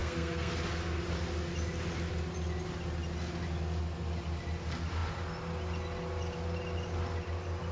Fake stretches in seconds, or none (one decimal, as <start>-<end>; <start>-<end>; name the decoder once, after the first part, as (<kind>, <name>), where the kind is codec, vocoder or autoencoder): 0.0-0.5 (codec, SNAC)